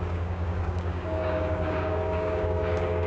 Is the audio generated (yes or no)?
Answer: yes